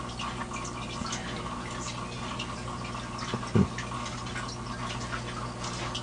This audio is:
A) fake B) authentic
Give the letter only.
B